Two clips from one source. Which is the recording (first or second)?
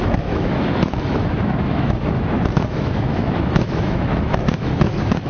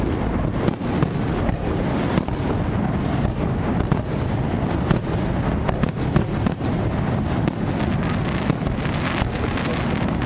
second